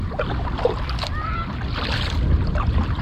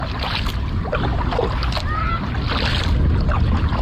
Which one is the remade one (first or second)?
first